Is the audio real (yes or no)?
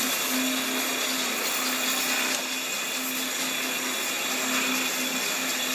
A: yes